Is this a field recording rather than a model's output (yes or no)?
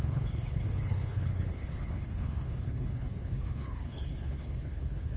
no